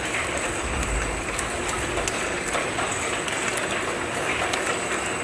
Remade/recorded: recorded